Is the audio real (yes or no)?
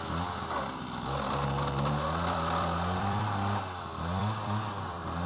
no